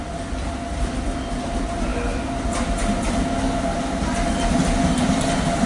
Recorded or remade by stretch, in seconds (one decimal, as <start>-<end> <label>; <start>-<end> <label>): 0.0-5.7 recorded